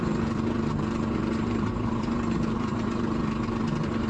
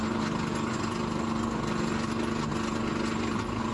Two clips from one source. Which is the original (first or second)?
second